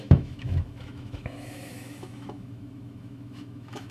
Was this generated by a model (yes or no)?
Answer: yes